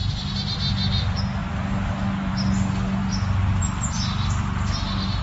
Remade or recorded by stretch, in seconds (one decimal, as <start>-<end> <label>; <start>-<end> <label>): 0.0-5.2 recorded